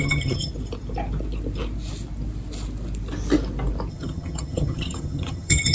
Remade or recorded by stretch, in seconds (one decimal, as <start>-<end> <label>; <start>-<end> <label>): 0.0-0.5 remade; 0.5-3.9 recorded; 3.9-5.7 remade